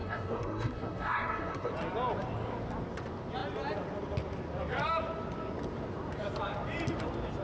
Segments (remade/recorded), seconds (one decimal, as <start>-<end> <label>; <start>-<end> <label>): 0.0-1.7 remade; 1.7-7.4 recorded